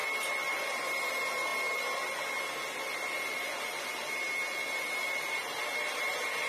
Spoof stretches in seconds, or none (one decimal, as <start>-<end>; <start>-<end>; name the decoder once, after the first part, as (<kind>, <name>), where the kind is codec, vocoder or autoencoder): none